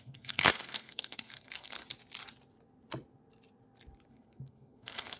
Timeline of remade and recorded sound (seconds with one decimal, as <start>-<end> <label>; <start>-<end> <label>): 0.0-1.8 remade; 1.8-4.1 recorded; 4.1-5.2 remade